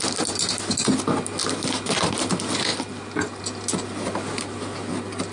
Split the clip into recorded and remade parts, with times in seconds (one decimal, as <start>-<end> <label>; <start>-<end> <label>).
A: 0.0-5.3 recorded